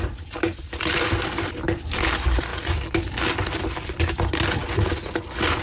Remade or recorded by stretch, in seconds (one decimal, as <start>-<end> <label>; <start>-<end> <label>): 0.0-2.5 remade; 2.5-3.7 recorded; 3.7-4.6 remade; 4.6-5.6 recorded